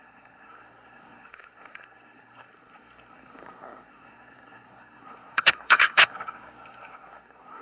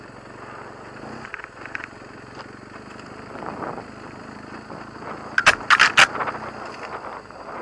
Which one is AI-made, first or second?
first